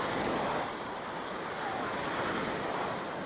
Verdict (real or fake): fake